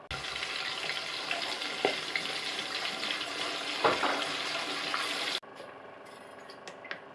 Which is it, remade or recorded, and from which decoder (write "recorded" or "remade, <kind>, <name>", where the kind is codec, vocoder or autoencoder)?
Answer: recorded